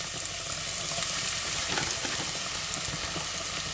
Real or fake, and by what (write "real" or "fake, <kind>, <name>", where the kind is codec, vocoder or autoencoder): real